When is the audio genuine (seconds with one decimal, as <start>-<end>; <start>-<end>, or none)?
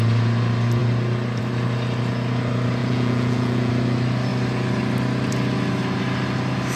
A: 0.0-2.8; 3.7-6.8